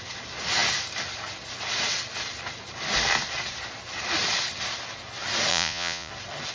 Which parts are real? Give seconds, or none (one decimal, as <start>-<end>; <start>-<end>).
0.0-5.5; 6.1-6.5